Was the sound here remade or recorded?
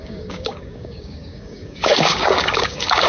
remade